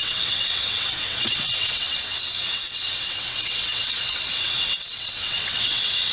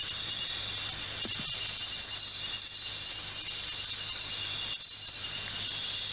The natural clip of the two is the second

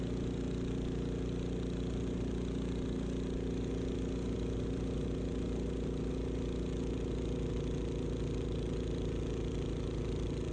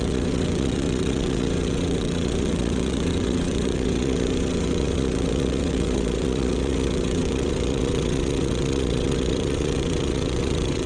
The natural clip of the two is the first